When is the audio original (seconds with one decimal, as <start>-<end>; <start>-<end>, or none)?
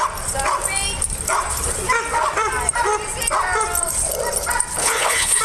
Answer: 0.0-4.8